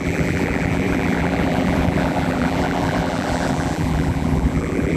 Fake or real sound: fake